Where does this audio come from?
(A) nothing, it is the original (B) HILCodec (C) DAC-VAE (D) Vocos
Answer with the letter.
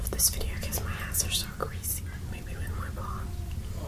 A